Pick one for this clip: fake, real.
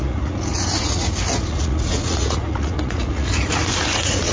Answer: fake